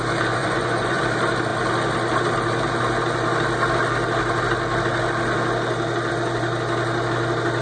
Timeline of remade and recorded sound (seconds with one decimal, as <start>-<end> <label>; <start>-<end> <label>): 0.0-0.4 recorded; 0.4-1.0 remade; 1.0-7.6 recorded